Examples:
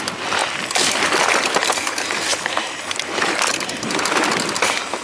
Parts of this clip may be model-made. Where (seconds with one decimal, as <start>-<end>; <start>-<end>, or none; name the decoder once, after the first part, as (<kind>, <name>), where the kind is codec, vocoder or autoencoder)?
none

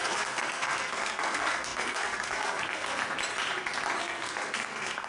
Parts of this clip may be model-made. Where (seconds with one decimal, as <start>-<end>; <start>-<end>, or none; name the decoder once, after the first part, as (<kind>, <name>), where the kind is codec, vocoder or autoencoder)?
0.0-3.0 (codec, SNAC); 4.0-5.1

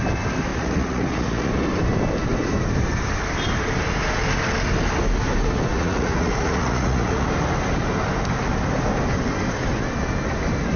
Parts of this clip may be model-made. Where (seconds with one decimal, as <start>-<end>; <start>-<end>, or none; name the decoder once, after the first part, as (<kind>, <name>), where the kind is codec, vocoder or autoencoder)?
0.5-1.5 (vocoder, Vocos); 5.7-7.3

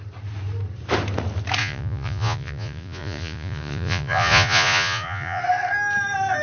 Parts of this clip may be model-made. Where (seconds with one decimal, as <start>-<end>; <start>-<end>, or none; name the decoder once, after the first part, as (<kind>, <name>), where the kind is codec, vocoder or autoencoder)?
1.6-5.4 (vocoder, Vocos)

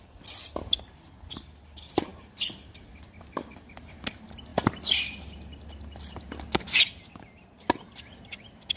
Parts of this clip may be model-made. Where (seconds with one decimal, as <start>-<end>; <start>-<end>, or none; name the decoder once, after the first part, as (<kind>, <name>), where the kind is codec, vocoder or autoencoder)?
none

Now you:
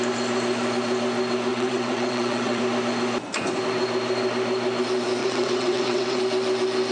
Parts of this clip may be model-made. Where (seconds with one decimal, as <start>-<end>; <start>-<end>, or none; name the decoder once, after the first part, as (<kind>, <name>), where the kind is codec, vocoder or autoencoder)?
1.5-2.6 (vocoder, WaveNeXt); 5.2-6.2

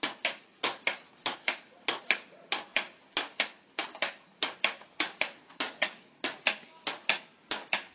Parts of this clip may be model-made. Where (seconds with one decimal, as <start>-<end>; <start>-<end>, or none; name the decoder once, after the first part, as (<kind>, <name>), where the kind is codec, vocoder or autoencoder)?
none